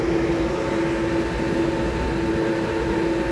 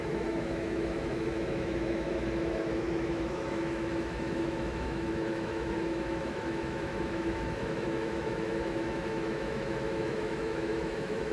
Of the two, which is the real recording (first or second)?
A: first